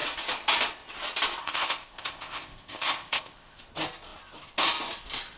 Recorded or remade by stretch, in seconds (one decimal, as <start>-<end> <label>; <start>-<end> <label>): 0.0-1.4 recorded; 1.4-3.6 remade; 3.6-5.4 recorded